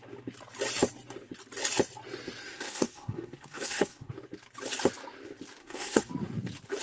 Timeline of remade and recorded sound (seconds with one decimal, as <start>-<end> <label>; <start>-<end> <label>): 0.0-2.4 recorded; 2.4-4.1 remade; 4.1-5.6 recorded; 5.6-6.1 remade; 6.1-6.8 recorded